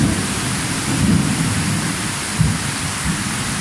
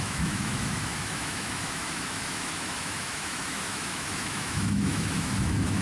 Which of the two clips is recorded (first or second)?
first